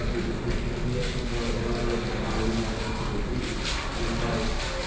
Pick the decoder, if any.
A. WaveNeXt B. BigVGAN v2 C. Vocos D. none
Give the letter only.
D